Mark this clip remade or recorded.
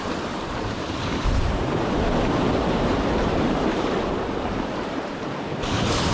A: remade